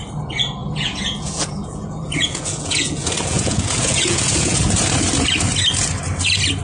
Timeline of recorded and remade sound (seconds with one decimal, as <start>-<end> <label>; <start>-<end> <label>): 0.0-0.6 recorded; 0.6-4.6 remade; 4.6-6.6 recorded